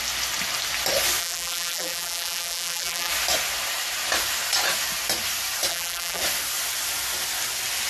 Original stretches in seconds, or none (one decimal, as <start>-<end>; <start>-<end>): 0.0-1.2; 3.1-5.7; 6.2-7.9